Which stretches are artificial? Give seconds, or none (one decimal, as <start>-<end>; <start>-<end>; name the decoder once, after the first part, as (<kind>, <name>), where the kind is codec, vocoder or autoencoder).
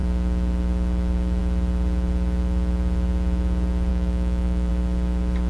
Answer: 3.9-4.7 (autoencoder, DAC-VAE)